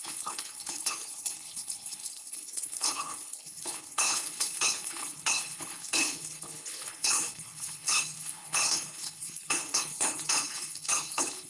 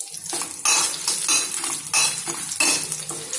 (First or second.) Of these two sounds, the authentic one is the second